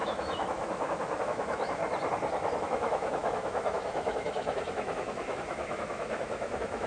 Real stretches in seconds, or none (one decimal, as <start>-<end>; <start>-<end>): 1.8-2.6

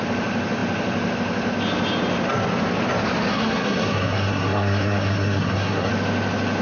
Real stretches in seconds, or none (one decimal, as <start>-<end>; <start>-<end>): 0.0-3.3; 5.9-6.6

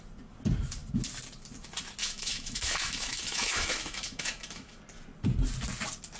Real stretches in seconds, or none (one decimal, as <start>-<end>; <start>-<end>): 0.0-2.0; 4.8-6.2

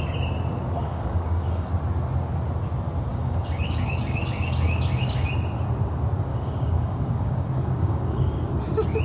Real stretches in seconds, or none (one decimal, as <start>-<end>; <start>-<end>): 0.0-0.8; 1.7-3.1; 5.3-6.3; 8.5-9.0

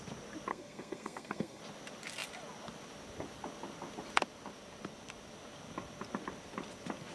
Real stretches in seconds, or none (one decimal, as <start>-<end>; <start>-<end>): 0.0-0.5; 1.6-7.1

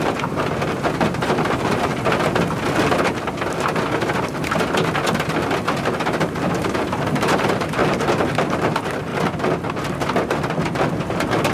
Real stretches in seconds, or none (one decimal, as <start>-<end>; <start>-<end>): 1.9-6.4; 7.8-8.4; 9.1-11.0

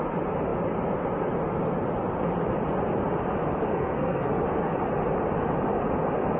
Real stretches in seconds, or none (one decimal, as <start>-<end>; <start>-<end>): 0.0-3.7; 4.3-6.4